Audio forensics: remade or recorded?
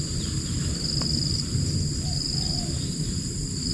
recorded